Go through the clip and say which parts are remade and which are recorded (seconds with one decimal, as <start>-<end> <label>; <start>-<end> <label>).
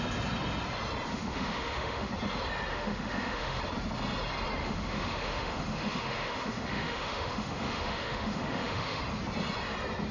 0.0-1.1 recorded; 1.1-2.1 remade; 2.1-2.7 recorded; 2.7-3.6 remade; 3.6-4.6 recorded; 4.6-9.0 remade; 9.0-10.1 recorded